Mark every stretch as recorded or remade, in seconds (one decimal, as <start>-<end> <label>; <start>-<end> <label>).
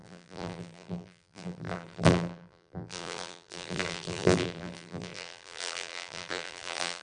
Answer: 0.0-7.0 remade